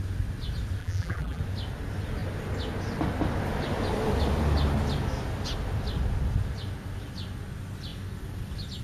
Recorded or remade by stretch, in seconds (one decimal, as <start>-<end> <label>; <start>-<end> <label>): 0.0-0.8 recorded; 0.8-1.4 remade; 1.4-8.8 recorded